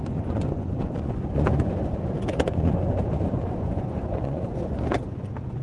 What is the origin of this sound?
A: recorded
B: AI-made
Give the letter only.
B